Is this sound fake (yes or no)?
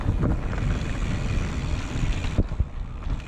no